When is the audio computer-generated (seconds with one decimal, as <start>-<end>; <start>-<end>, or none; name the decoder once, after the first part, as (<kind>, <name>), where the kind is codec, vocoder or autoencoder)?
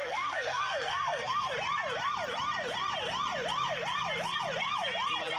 0.0-1.5 (codec, SNAC)